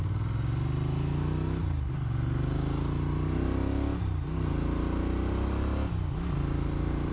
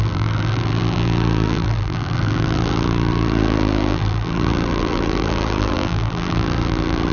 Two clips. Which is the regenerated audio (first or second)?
second